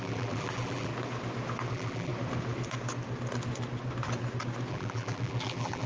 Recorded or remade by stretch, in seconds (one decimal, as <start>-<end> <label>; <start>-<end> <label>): 0.0-0.9 remade; 0.9-1.7 recorded; 1.7-2.1 remade; 2.1-4.7 recorded; 4.7-5.9 remade